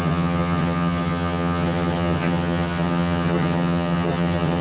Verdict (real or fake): fake